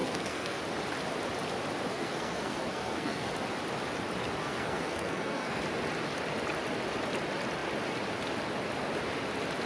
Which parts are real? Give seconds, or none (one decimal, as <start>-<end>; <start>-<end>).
0.6-1.9; 3.3-4.4; 5.6-9.7